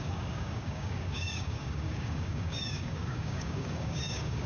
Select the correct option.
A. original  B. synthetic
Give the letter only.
B